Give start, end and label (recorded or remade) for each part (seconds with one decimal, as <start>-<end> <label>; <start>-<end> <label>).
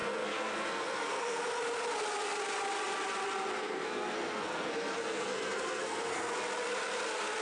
0.0-1.4 remade; 1.4-3.6 recorded; 3.6-6.3 remade; 6.3-7.4 recorded